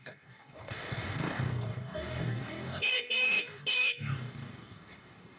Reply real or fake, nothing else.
fake